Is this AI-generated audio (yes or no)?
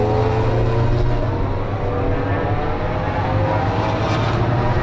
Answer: no